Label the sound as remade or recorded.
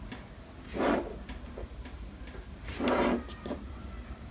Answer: recorded